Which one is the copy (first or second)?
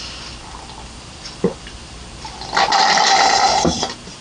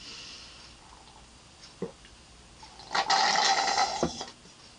first